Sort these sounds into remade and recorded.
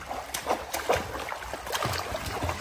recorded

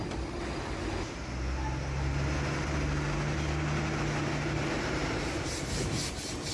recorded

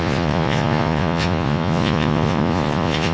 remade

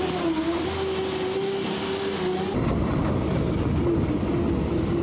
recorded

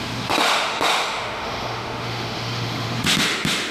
remade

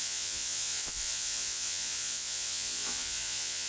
remade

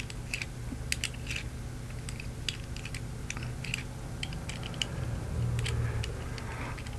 recorded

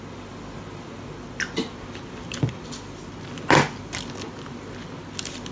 recorded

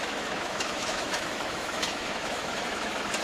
remade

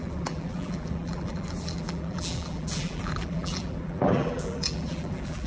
remade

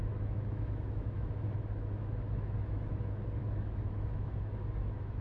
remade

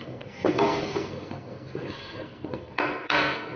remade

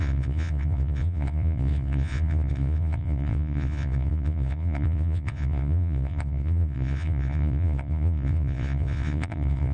remade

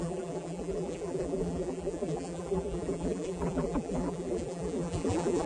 remade